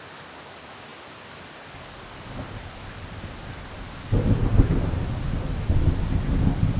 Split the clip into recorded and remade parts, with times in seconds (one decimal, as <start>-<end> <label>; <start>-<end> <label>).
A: 0.0-6.8 recorded